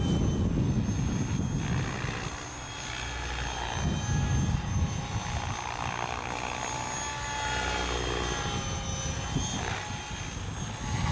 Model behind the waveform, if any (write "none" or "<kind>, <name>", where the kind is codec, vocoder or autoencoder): none